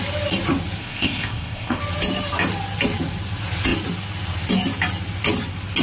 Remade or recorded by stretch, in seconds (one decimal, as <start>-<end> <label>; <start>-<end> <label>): 0.0-0.8 recorded; 0.8-1.8 remade; 1.8-5.8 recorded